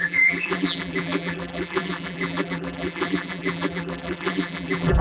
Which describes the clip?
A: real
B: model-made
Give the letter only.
B